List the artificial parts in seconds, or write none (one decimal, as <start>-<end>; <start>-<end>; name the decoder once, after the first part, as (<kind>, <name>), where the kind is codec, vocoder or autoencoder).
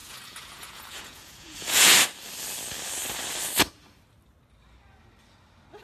0.0-1.9 (vocoder, Vocos)